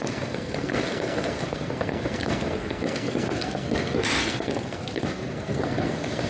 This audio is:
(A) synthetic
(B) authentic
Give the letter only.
A